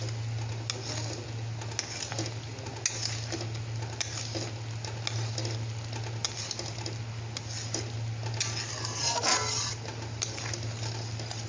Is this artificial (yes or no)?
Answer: no